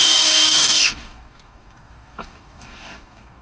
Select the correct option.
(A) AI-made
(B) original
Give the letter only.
A